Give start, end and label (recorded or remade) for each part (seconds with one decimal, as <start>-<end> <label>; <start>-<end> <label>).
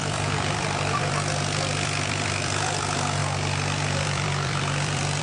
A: 0.0-3.2 remade; 3.2-4.0 recorded; 4.0-5.2 remade